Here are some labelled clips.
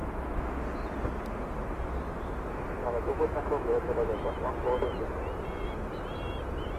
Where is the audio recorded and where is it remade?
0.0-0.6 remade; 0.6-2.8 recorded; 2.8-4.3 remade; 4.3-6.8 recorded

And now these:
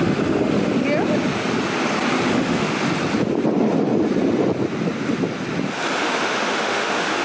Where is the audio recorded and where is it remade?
0.0-0.7 remade; 0.7-2.3 recorded; 2.3-2.8 remade; 2.8-6.0 recorded; 6.0-7.2 remade

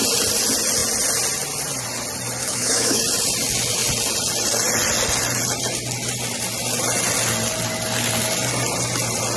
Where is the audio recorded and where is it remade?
0.0-2.4 recorded; 2.4-3.0 remade; 3.0-9.4 recorded

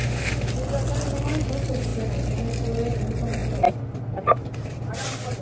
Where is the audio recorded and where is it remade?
0.0-0.5 remade; 0.5-5.4 recorded